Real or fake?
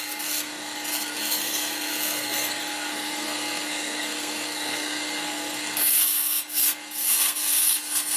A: fake